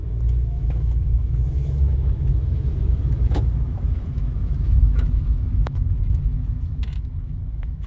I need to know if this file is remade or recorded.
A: remade